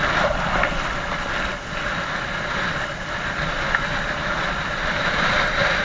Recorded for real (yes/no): yes